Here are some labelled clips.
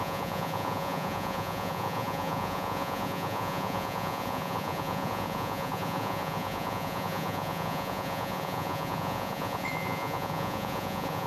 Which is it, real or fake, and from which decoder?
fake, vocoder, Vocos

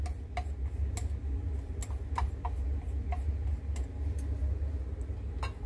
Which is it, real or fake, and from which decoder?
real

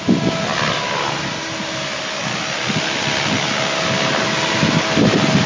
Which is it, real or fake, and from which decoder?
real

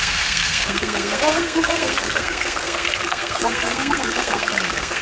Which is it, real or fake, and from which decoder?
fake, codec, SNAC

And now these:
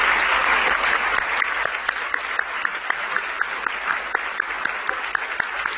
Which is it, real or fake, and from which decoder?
real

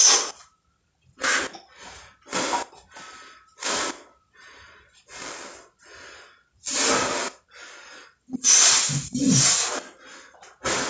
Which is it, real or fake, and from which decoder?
real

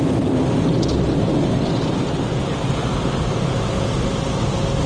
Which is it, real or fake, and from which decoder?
real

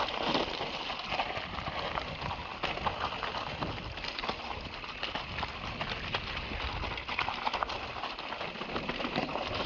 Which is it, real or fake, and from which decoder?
real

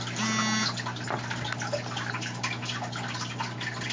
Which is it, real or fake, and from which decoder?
real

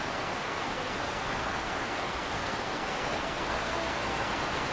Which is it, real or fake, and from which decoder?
fake, codec, SNAC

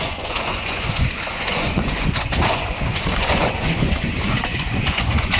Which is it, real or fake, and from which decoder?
fake, vocoder, Vocos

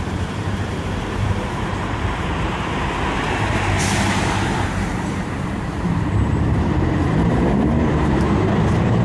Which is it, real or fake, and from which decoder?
fake, vocoder, BigVGAN v2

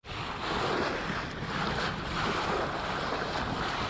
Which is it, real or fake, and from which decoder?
real